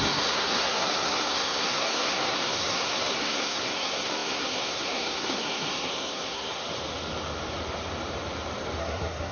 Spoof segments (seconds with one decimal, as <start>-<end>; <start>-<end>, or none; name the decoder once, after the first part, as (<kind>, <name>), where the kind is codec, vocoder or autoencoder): 0.0-6.6 (codec, SNAC); 8.8-9.3